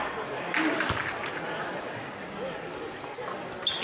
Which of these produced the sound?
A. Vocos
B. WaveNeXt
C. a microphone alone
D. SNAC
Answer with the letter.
C